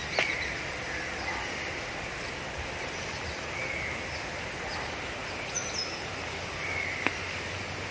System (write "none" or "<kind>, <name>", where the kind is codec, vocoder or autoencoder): none